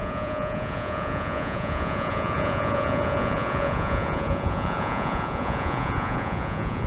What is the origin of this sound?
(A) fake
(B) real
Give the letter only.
A